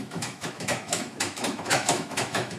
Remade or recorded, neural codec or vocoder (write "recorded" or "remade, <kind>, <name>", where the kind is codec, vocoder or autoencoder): remade, autoencoder, DAC-VAE